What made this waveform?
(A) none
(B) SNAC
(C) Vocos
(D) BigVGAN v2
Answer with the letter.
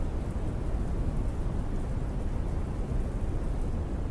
A